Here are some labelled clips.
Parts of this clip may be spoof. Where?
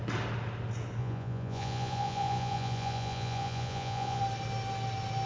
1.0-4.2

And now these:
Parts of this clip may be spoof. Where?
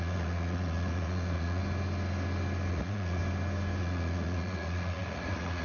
0.0-1.6; 2.7-3.2; 3.8-5.6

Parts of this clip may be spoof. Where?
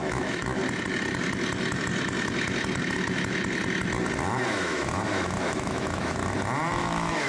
0.0-0.6; 4.5-6.2; 6.8-7.3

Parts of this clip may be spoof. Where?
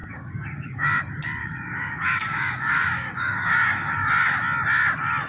0.0-1.0; 1.4-4.1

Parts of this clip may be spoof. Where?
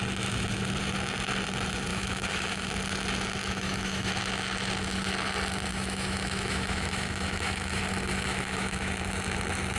1.9-2.7; 3.4-4.1; 5.7-7.8; 8.3-9.0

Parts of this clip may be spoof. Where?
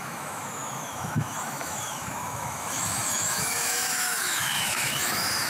0.0-5.5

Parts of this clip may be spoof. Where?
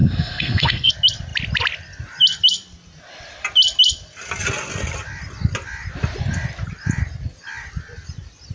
0.0-0.9